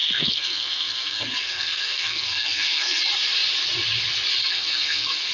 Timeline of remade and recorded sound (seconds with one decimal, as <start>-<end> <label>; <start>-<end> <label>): 0.0-3.0 remade; 3.0-4.4 recorded; 4.4-5.3 remade

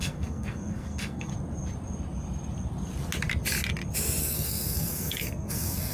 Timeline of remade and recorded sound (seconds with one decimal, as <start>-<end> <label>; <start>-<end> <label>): 0.0-1.3 remade; 1.3-4.2 recorded; 4.2-5.9 remade